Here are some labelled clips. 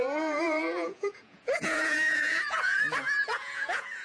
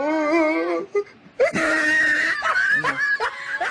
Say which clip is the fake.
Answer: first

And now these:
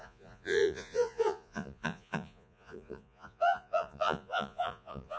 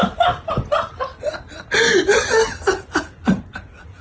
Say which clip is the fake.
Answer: first